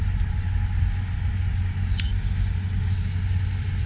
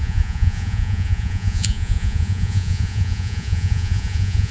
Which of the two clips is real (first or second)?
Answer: first